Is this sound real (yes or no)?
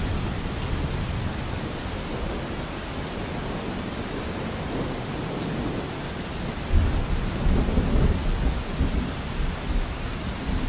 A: yes